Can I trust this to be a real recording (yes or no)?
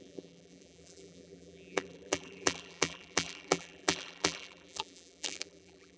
no